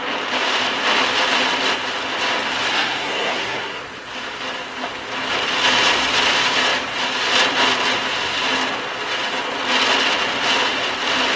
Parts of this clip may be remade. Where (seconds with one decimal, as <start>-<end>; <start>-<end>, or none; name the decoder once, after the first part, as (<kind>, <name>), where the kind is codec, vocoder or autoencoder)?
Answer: 2.7-3.8 (codec, SNAC)